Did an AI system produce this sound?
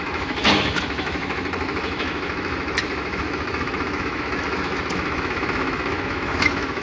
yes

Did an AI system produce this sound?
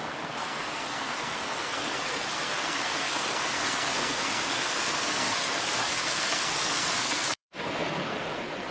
yes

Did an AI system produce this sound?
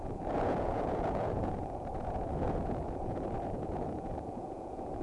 yes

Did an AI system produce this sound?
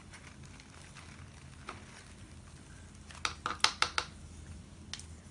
no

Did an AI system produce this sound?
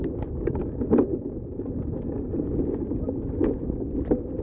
no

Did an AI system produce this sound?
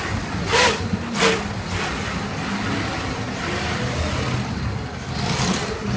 no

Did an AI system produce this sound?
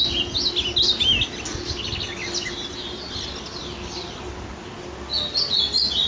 no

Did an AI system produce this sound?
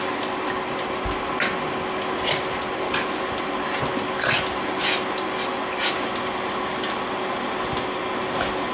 no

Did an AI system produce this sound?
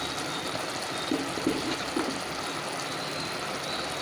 no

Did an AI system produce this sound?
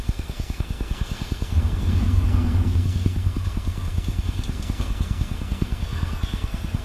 yes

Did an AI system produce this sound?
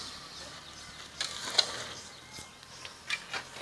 no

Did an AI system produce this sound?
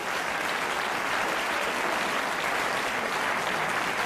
no